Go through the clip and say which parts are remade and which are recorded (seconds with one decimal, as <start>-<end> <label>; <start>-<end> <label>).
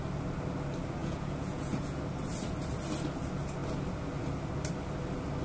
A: 0.0-1.0 recorded; 1.0-2.0 remade; 2.0-5.4 recorded